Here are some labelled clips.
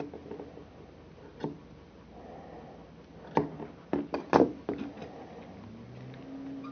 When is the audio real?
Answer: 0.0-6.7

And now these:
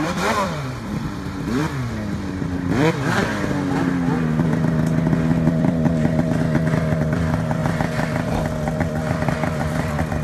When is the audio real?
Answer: 1.6-2.7; 3.3-5.6

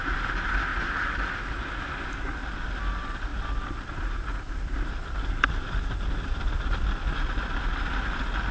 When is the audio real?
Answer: 0.0-3.3; 7.1-8.5

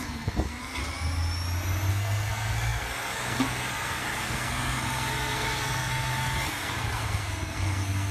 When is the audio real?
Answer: 0.8-1.9

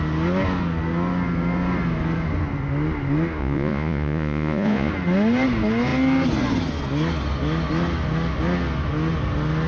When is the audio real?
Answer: 0.0-3.4; 4.9-9.7

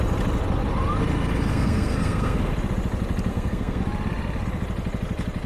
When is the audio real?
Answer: 0.0-1.5; 2.5-3.3; 3.8-5.5